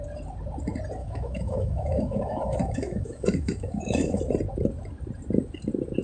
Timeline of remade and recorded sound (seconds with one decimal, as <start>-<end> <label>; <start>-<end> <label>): 0.0-1.0 recorded; 1.0-4.2 remade; 4.2-6.0 recorded